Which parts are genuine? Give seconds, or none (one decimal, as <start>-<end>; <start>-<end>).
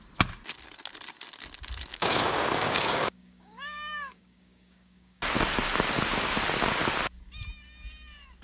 0.0-1.9; 5.2-8.4